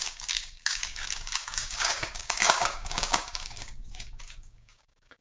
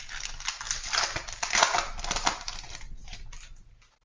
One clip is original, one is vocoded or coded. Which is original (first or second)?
second